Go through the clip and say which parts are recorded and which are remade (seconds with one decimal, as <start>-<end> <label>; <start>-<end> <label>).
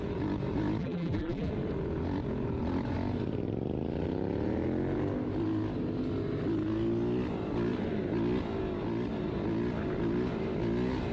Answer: 0.0-0.8 recorded; 0.8-1.5 remade; 1.5-11.1 recorded